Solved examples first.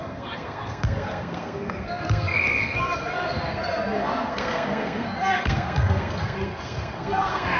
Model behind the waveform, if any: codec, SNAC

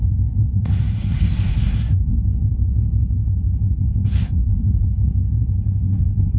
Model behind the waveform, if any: codec, SNAC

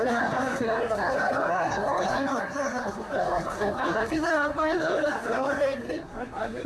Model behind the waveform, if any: codec, SNAC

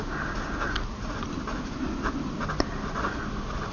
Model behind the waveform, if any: none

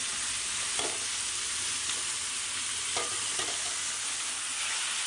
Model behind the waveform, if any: none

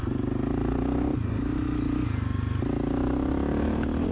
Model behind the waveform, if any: none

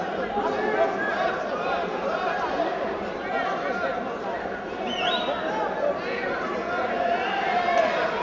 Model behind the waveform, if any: none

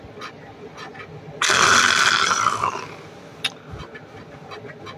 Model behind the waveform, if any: none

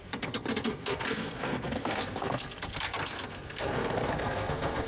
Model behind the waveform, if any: codec, SNAC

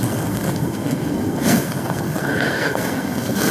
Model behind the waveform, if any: codec, SNAC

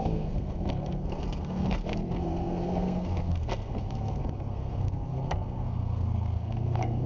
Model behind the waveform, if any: codec, SNAC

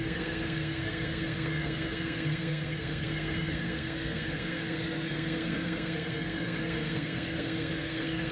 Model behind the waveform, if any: codec, SNAC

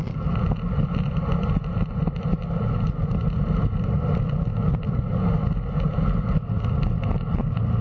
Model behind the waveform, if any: none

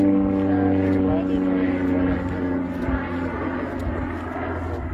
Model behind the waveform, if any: none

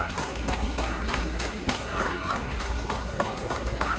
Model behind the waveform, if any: codec, SNAC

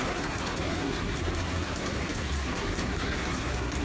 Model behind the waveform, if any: codec, SNAC